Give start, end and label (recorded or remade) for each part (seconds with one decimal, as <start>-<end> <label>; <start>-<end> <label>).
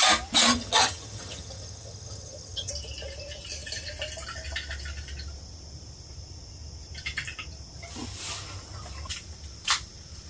0.0-0.5 recorded; 0.5-2.7 remade; 2.7-10.3 recorded